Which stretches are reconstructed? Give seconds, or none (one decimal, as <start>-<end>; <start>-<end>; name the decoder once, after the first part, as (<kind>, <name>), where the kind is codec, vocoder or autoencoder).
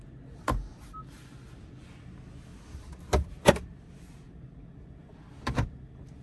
none